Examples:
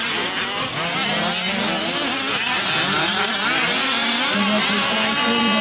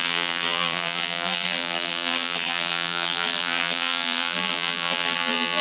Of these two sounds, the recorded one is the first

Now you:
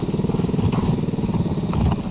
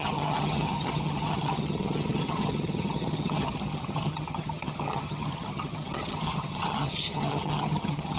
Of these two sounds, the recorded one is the first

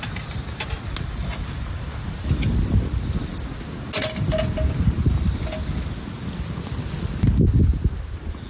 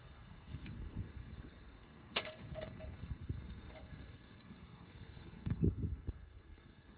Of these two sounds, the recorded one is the first